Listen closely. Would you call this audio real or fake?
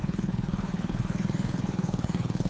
fake